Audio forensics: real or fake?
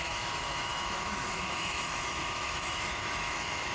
fake